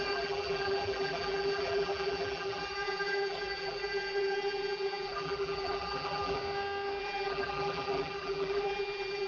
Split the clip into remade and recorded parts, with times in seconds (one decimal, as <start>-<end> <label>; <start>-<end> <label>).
0.0-6.4 remade; 6.4-7.0 recorded; 7.0-9.3 remade